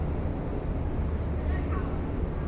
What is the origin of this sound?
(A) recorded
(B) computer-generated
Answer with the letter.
A